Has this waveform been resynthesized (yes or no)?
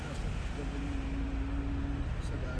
no